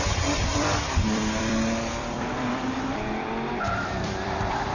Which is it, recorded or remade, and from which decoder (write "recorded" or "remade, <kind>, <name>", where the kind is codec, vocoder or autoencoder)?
remade, vocoder, BigVGAN v2